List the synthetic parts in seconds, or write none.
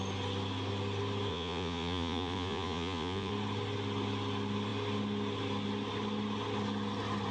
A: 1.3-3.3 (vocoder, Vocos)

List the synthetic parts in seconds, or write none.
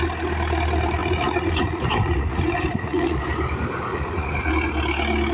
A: 1.0-3.2 (vocoder, Vocos); 3.9-4.5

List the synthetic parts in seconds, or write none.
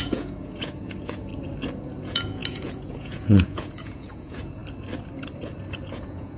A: 0.0-1.3 (vocoder, Vocos); 2.0-4.6; 5.9-6.4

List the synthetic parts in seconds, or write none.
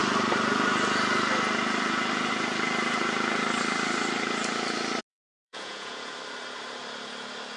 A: 5.1-6.1 (vocoder, Vocos)